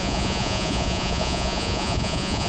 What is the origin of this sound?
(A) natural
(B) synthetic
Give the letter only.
B